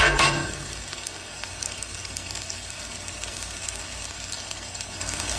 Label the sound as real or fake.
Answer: fake